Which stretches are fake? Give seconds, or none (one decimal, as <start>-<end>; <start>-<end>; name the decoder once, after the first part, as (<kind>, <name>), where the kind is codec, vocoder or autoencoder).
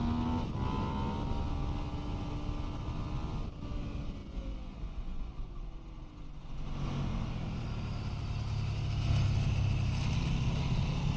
4.2-5.7 (vocoder, Vocos)